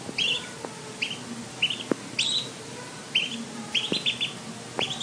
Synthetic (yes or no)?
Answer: no